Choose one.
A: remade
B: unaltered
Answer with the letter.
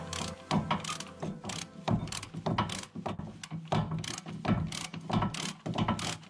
B